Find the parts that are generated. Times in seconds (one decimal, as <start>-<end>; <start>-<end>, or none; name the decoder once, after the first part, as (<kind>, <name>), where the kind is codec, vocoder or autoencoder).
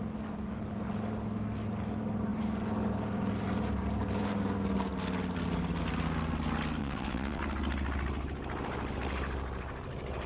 6.8-7.4 (vocoder, WaveNeXt)